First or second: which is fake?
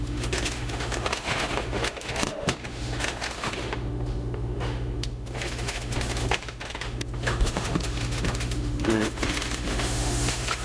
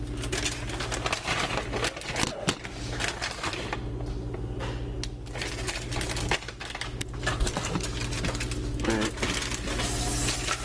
first